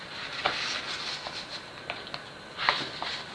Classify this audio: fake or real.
real